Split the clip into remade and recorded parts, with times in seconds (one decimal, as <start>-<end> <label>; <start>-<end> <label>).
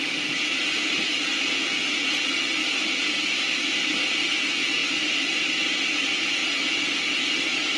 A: 0.0-7.8 recorded